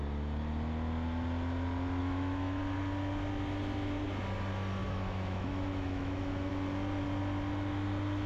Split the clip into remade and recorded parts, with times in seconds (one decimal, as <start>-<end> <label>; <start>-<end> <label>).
0.0-2.0 recorded; 2.0-2.6 remade; 2.6-4.8 recorded; 4.8-6.5 remade; 6.5-8.3 recorded